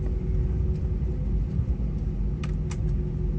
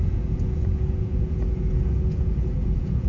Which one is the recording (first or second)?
first